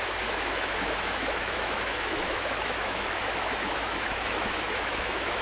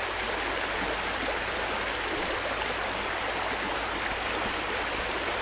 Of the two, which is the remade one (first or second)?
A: first